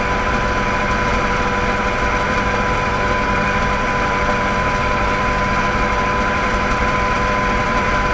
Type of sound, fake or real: fake